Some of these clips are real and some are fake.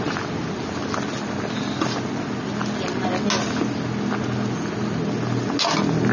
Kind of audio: real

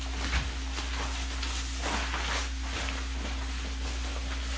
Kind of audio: real